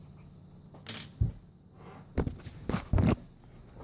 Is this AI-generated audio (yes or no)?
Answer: no